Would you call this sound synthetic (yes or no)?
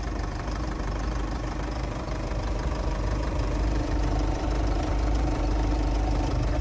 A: yes